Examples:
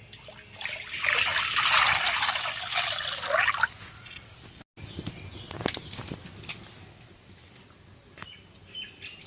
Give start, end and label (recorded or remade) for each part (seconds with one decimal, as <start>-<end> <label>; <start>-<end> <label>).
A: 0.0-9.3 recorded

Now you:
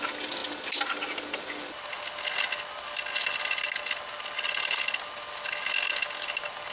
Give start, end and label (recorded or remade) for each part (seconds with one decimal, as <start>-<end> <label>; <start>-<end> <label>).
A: 0.0-6.7 recorded

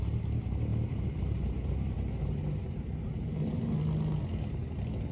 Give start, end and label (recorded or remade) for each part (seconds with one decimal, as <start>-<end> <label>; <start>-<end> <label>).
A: 0.0-0.7 recorded; 0.7-3.8 remade; 3.8-5.1 recorded

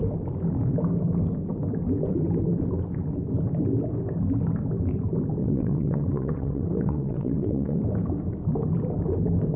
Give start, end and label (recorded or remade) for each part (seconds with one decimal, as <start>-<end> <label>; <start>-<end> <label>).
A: 0.0-5.4 recorded; 5.4-7.8 remade; 7.8-9.6 recorded